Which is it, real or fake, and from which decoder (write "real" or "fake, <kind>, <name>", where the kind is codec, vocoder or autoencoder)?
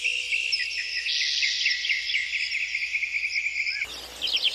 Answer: real